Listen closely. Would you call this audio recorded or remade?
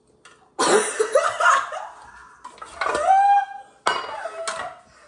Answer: recorded